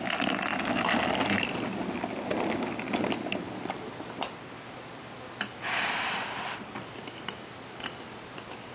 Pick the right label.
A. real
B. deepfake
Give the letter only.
A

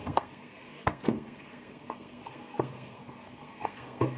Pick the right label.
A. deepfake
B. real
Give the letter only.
A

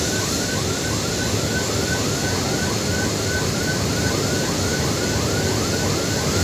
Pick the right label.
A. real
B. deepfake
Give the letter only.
A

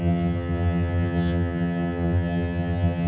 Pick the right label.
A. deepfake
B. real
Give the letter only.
A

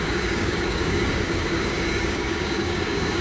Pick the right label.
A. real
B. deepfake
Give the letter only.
B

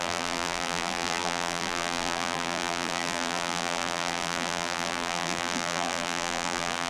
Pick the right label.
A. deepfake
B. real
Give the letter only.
A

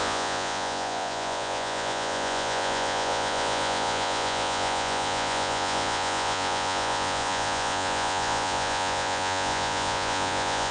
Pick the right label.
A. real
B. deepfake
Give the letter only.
B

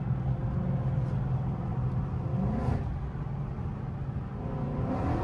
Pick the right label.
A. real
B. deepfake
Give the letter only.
A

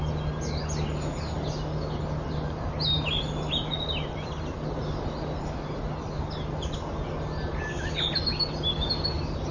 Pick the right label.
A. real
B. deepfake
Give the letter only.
A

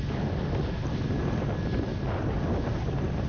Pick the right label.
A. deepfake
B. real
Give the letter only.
B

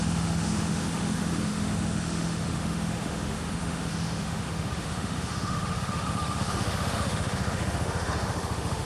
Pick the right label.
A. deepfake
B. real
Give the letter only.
A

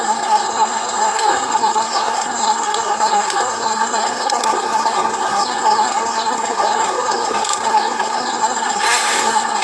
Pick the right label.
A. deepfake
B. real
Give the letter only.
A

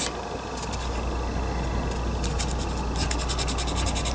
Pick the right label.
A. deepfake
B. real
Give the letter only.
B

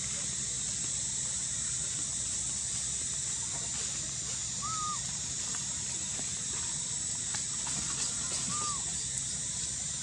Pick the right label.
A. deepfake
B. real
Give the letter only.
B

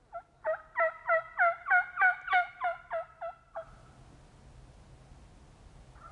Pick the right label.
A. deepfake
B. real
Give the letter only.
B